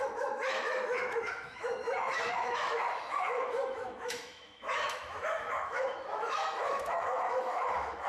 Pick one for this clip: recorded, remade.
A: remade